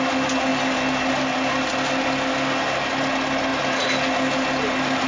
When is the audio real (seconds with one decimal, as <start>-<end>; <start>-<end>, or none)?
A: 0.0-5.1